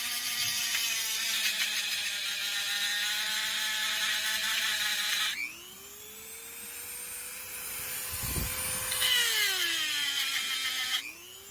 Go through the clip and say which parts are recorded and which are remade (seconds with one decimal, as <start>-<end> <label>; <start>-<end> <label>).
0.0-2.9 remade; 2.9-3.5 recorded; 3.5-5.4 remade; 5.4-7.3 recorded; 7.3-8.5 remade; 8.5-11.5 recorded